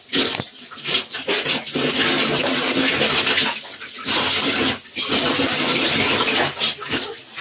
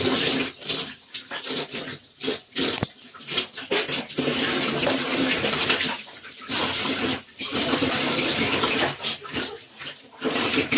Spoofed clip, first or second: second